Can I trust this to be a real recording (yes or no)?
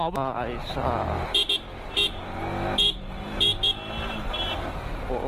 yes